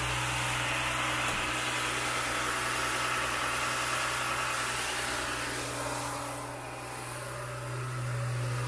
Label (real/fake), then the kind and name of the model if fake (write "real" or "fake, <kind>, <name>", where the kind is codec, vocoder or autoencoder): real